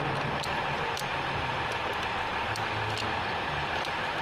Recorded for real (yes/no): yes